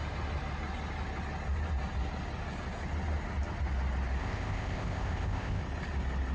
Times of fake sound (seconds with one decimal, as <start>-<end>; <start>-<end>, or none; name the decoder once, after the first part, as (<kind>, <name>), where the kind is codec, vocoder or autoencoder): 4.2-5.6 (codec, ZipCodec)